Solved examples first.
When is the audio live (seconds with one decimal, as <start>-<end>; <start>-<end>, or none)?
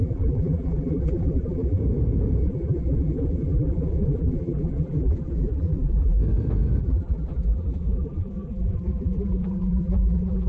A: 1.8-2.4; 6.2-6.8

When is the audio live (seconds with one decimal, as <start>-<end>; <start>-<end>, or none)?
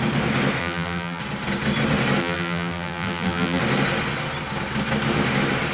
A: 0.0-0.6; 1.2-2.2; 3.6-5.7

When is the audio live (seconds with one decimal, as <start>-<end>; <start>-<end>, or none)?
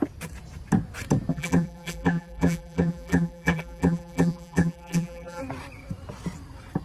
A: 0.0-1.3; 5.4-6.8